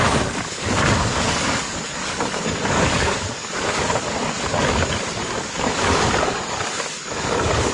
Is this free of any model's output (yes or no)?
no